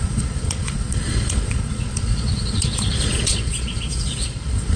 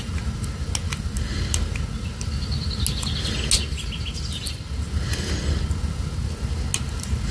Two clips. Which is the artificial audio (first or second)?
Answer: first